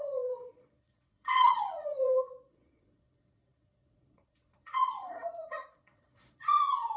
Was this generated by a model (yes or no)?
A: yes